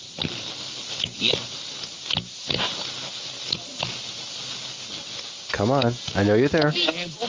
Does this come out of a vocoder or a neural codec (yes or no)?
no